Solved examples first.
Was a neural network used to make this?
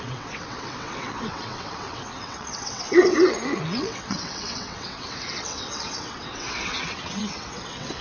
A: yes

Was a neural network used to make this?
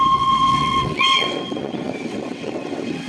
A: yes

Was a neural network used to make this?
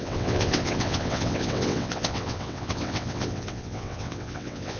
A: yes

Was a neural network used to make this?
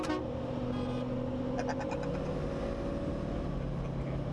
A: no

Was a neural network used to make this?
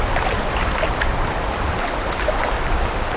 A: no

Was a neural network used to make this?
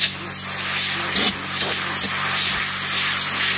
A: no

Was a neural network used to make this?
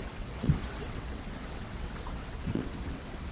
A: yes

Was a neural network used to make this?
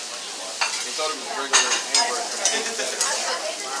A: no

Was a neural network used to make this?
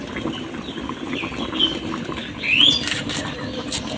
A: no